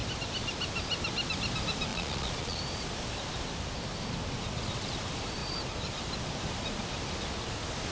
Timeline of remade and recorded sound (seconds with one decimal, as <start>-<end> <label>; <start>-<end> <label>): 0.0-1.9 recorded; 1.9-2.6 remade; 2.6-7.9 recorded